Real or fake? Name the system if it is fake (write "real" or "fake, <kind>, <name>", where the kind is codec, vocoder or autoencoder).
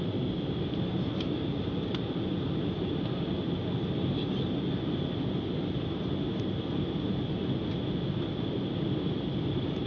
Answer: real